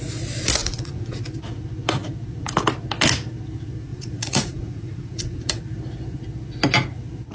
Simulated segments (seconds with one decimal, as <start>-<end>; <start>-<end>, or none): 0.6-1.2; 3.9-5.6